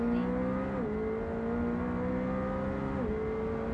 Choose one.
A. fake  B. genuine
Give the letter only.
B